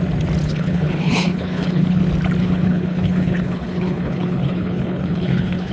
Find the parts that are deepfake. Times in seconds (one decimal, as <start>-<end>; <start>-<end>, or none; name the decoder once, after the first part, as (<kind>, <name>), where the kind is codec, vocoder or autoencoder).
0.4-2.0 (codec, HILCodec); 2.4-5.7